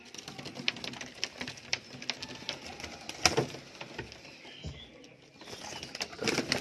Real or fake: real